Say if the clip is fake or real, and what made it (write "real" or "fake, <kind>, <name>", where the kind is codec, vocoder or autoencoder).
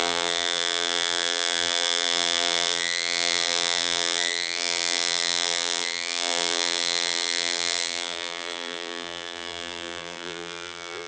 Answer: fake, vocoder, BigVGAN v2